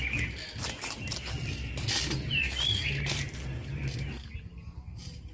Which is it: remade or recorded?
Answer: recorded